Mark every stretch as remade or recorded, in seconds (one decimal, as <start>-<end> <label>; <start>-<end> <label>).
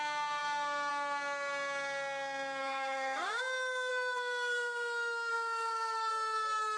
0.0-2.6 recorded; 2.6-3.4 remade; 3.4-3.9 recorded; 3.9-6.1 remade; 6.1-6.8 recorded